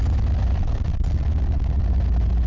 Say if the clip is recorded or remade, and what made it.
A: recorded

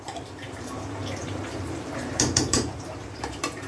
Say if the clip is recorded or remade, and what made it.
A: remade, vocoder, BigVGAN v2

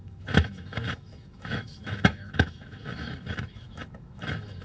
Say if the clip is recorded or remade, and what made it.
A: remade, autoencoder, DAC-VAE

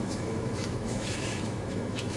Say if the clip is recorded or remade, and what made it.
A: remade, autoencoder, DAC-VAE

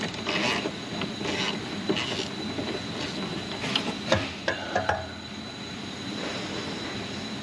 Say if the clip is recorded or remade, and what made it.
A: recorded